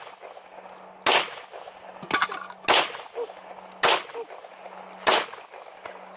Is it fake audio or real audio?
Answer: real